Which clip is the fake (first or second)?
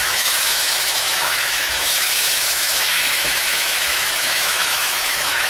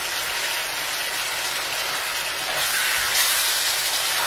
first